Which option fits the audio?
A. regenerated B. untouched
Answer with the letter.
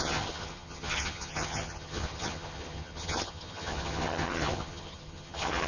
A